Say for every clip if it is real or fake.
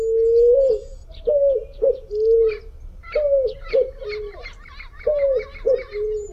real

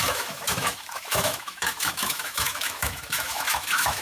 fake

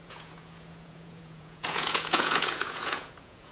fake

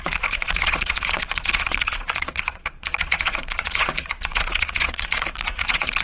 fake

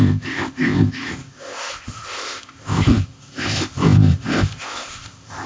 fake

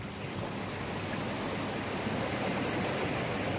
real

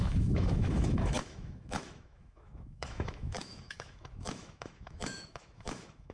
fake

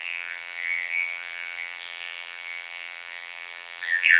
fake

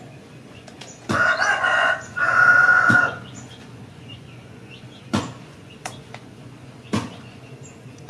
fake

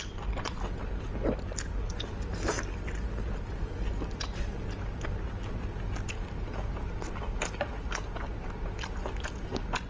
real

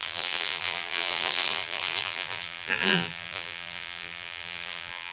fake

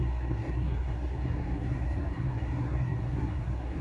fake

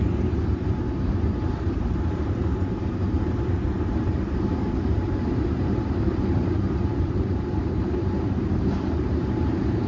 fake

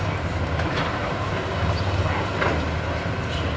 real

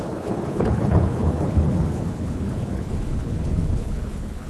fake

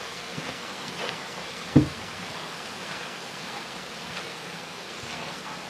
fake